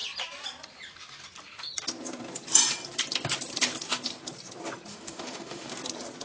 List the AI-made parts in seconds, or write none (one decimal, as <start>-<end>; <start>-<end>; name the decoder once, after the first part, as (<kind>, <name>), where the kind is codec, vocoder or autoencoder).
4.9-5.7 (autoencoder, DAC-VAE)